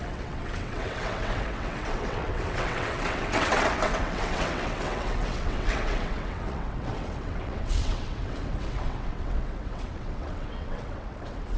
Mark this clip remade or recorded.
remade